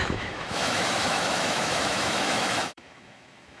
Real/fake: fake